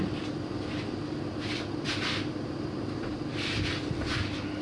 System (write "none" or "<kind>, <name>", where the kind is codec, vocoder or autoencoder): none